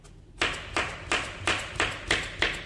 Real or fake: real